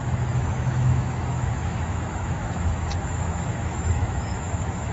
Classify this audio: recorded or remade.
remade